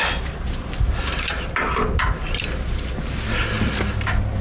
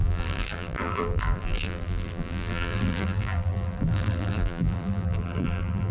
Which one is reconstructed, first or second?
second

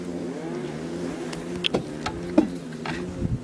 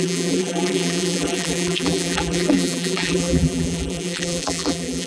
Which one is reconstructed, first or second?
second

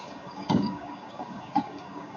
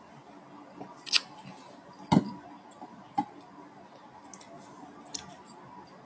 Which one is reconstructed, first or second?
first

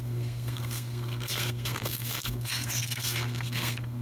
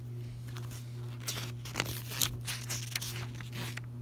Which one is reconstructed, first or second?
first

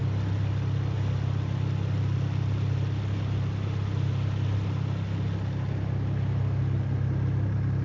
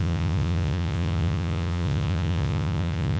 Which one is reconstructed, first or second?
second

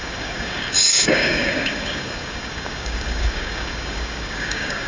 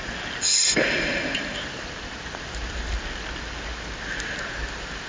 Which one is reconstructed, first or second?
first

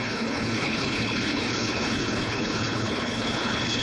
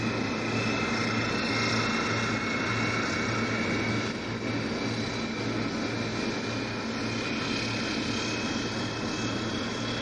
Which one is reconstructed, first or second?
first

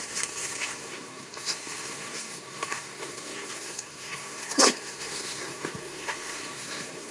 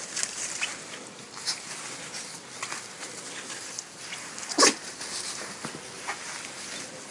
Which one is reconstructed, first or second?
first